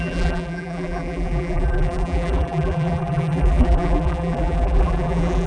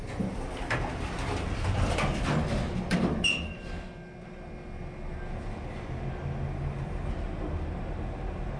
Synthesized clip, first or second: first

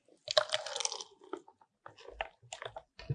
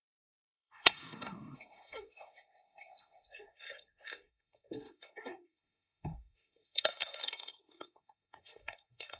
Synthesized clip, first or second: second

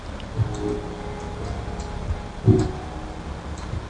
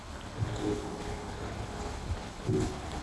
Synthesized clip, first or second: second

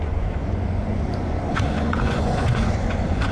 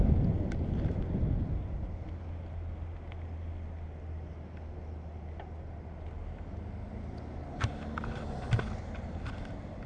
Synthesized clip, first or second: first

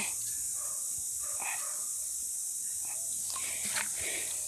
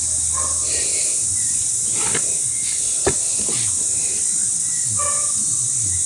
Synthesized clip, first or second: first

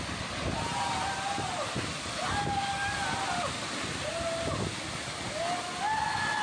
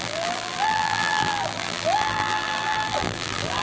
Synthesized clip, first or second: second